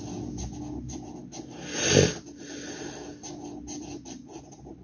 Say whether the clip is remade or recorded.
recorded